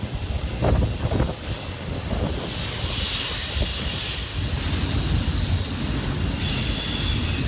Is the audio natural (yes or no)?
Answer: yes